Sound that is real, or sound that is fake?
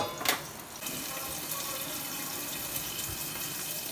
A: real